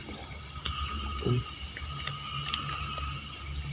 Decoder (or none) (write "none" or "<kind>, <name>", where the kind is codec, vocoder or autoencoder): none